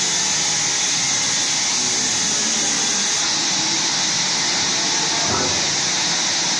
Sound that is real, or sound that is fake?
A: real